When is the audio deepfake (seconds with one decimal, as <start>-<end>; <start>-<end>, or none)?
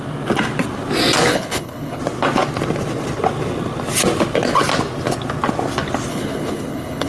1.3-2.0; 6.1-7.1